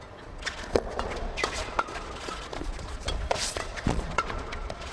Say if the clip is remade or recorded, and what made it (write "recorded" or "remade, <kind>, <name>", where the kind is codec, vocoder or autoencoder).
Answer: remade, vocoder, Vocos